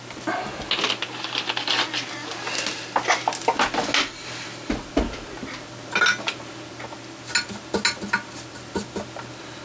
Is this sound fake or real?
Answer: real